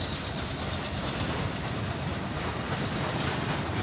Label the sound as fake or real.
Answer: fake